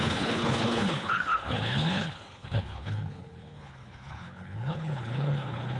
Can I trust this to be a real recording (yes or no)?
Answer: no